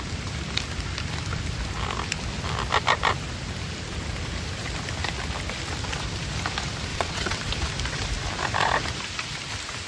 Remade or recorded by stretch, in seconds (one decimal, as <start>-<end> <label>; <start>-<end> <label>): 0.0-6.9 recorded; 6.9-7.5 remade; 7.5-9.9 recorded